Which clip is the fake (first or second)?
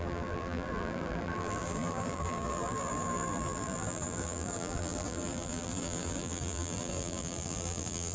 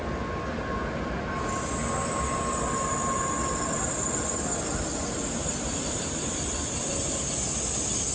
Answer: first